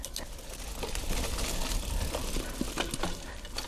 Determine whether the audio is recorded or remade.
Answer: recorded